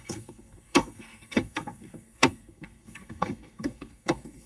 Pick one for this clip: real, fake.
fake